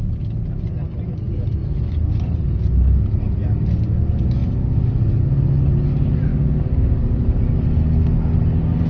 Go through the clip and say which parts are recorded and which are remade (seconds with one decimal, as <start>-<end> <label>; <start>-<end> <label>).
0.0-6.3 recorded; 6.3-7.4 remade; 7.4-8.9 recorded